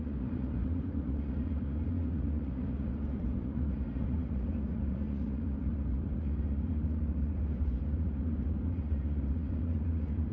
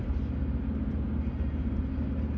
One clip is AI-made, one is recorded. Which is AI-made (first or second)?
first